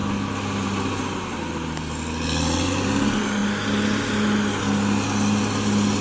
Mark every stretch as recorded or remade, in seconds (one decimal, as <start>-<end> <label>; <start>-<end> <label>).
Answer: 0.0-6.0 recorded